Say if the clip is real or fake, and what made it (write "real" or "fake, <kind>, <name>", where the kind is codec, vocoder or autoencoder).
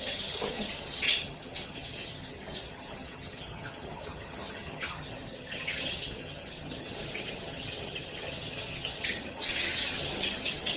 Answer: fake, vocoder, HiFi-GAN